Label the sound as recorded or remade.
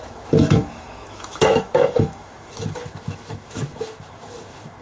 remade